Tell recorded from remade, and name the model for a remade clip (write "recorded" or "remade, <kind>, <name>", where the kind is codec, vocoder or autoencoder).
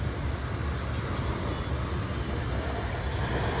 recorded